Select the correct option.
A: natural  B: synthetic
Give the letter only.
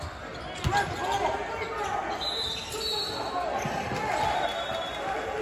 A